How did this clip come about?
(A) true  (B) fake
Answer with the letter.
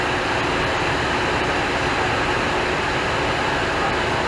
A